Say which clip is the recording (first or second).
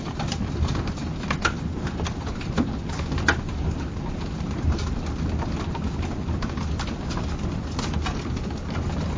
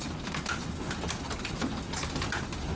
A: second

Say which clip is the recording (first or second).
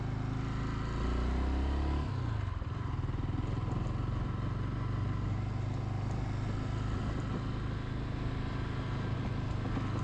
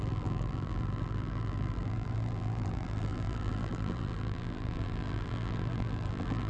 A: first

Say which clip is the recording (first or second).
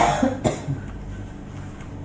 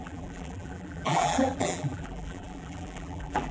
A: first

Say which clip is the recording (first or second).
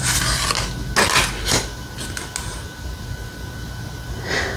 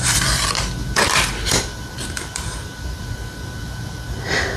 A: first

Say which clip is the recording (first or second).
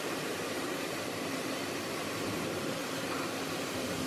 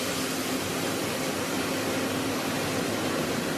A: second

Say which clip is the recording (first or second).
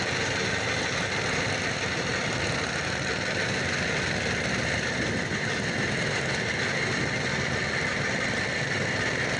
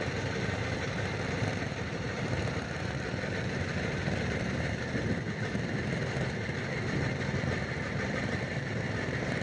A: first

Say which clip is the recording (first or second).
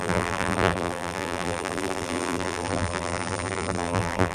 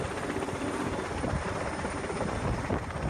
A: second